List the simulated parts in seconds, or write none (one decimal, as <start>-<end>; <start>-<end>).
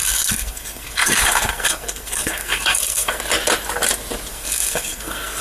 0.0-3.2; 4.3-5.4